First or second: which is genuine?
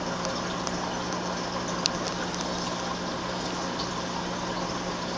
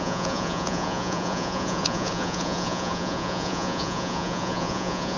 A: first